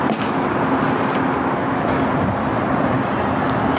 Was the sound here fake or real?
real